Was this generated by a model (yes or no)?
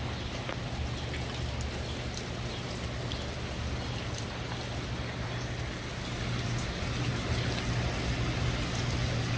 no